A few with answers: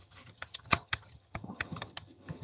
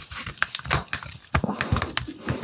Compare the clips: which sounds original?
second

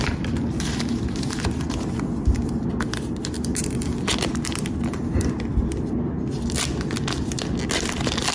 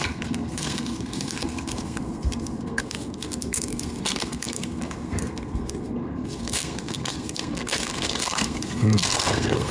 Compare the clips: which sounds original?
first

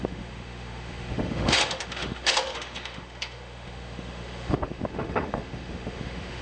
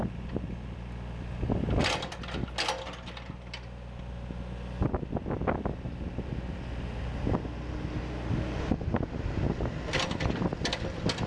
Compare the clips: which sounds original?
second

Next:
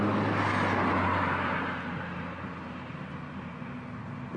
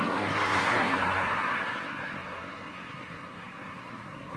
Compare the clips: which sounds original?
first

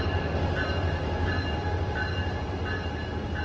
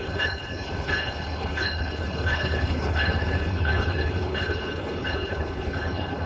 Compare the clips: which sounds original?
first